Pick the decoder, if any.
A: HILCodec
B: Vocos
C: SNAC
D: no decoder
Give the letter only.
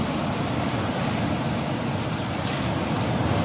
D